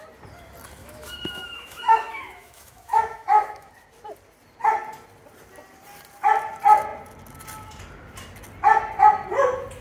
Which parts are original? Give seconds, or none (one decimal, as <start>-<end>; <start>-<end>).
0.0-0.8; 3.7-9.8